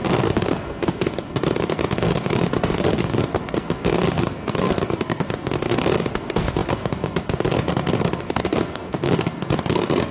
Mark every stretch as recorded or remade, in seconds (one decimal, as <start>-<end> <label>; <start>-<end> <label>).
0.0-10.1 remade